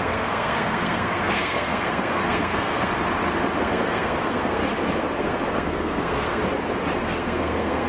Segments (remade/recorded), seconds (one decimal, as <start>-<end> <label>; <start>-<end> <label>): 0.0-2.9 remade; 2.9-3.6 recorded; 3.6-4.6 remade; 4.6-5.2 recorded; 5.2-6.4 remade; 6.4-7.0 recorded; 7.0-7.9 remade

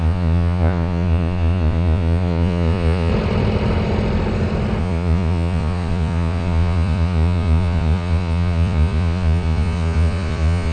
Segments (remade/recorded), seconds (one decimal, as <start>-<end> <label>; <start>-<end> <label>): 0.0-3.1 remade; 3.1-4.8 recorded; 4.8-10.7 remade

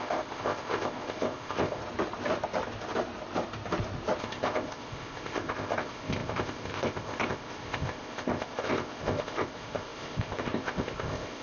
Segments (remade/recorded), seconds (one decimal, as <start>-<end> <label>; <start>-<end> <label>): 0.0-1.8 remade; 1.8-4.2 recorded; 4.2-11.4 remade

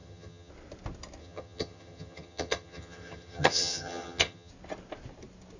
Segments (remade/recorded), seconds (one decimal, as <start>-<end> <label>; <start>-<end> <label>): 0.0-0.5 remade; 0.5-1.2 recorded; 1.2-4.5 remade; 4.5-5.6 recorded

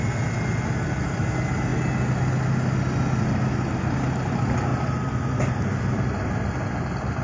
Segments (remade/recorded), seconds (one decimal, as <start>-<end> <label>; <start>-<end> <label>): 0.0-7.2 recorded

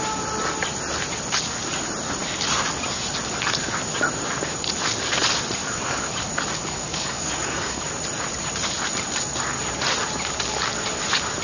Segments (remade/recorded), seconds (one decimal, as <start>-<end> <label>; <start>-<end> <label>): 0.0-5.6 recorded; 5.6-6.1 remade; 6.1-6.6 recorded; 6.6-7.8 remade; 7.8-11.4 recorded

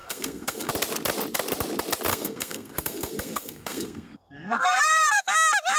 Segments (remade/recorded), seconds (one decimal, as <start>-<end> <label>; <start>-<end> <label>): 0.0-0.7 remade; 0.7-2.1 recorded; 2.1-5.3 remade; 5.3-5.8 recorded

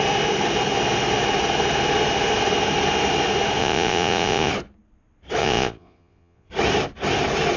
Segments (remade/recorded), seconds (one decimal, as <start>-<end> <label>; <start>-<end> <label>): 0.0-3.6 recorded; 3.6-4.5 remade; 4.5-5.4 recorded; 5.4-6.5 remade; 6.5-7.6 recorded